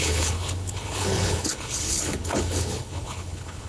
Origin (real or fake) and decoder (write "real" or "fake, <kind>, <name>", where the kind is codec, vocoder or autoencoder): fake, codec, HILCodec